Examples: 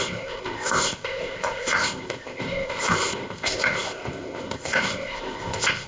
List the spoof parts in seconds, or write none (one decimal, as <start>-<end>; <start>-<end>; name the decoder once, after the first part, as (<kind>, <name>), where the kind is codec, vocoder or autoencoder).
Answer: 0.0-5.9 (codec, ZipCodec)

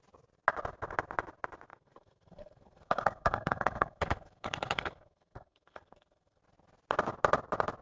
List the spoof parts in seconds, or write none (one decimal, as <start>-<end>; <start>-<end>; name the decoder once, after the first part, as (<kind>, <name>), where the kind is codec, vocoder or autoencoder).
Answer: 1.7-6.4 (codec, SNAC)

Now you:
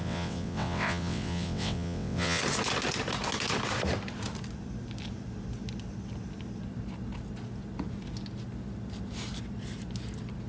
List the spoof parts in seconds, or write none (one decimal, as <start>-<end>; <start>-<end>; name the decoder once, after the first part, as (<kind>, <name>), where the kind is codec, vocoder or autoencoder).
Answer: 0.0-2.4 (vocoder, WaveNeXt)